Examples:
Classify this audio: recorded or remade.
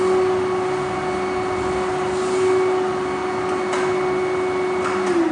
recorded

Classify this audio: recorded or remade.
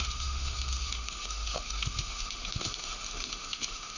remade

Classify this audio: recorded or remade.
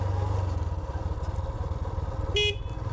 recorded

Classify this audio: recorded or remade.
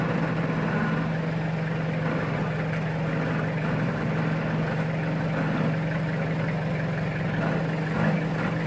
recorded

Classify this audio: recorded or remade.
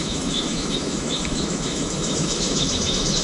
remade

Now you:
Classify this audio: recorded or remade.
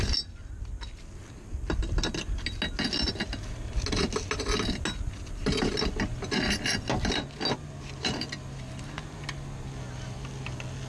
recorded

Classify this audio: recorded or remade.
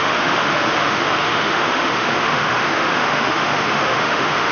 remade